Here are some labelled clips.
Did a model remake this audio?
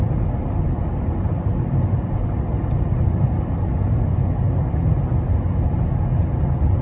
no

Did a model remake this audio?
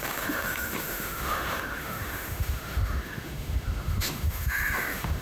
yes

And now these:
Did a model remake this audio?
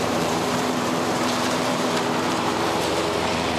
yes